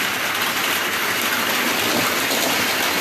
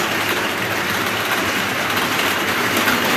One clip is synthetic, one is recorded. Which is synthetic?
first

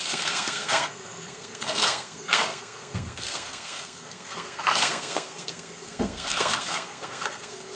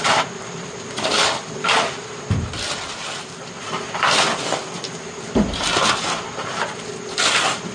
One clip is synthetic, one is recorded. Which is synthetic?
first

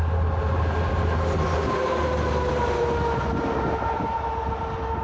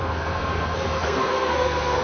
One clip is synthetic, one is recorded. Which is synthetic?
second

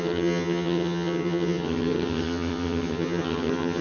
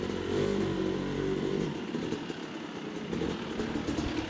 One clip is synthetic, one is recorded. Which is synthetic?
first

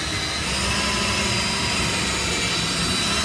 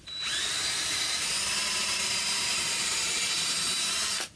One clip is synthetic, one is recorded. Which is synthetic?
second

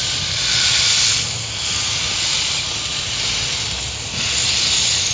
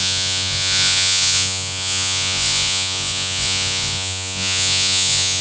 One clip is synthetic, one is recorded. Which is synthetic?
second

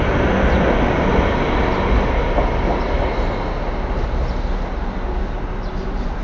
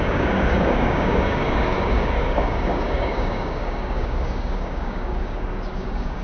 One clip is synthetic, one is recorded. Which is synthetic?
second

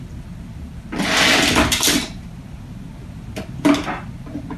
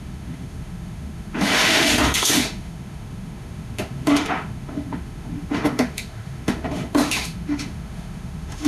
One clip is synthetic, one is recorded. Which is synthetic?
second